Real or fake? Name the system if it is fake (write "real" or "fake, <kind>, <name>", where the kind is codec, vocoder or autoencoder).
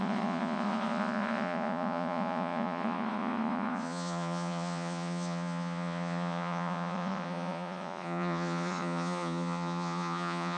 fake, vocoder, Vocos